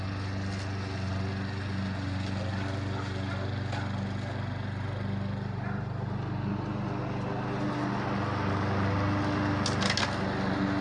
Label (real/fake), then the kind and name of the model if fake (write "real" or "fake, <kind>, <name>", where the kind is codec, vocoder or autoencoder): real